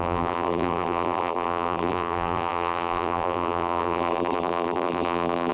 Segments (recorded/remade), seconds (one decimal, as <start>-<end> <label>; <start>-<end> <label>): 0.0-5.5 remade